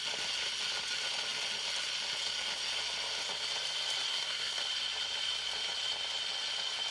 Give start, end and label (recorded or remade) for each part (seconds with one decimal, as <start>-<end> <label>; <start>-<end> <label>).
0.0-4.1 recorded; 4.1-4.6 remade; 4.6-6.9 recorded

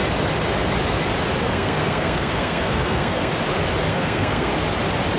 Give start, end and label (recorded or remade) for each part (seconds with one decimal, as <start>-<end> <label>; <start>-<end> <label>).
0.0-1.4 recorded; 1.4-3.3 remade; 3.3-3.9 recorded; 3.9-4.5 remade; 4.5-5.2 recorded